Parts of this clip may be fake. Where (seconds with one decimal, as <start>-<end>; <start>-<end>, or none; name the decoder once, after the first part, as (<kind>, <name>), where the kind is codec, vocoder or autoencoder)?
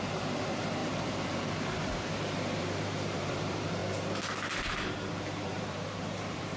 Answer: 0.0-3.8 (vocoder, BigVGAN v2); 5.1-6.6